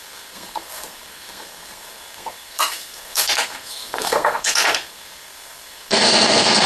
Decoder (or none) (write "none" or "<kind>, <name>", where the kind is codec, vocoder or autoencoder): codec, SNAC